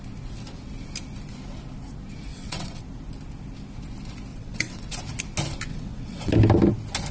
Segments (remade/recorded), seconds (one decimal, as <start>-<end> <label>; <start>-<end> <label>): 0.0-2.3 recorded; 2.3-2.8 remade; 2.8-4.3 recorded; 4.3-5.0 remade; 5.0-5.7 recorded; 5.7-6.3 remade; 6.3-7.1 recorded